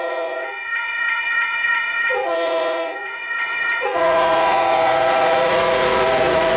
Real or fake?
fake